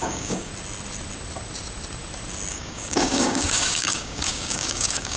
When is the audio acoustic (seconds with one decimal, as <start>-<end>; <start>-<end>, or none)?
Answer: 0.5-2.5